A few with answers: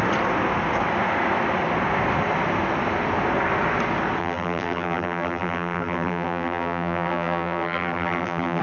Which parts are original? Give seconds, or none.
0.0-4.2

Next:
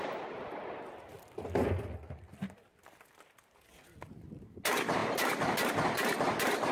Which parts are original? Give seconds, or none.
0.0-6.7